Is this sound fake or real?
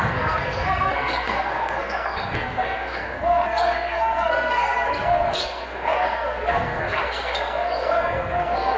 fake